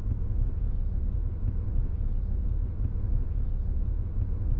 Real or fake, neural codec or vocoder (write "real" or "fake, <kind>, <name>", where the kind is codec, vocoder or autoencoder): fake, vocoder, Vocos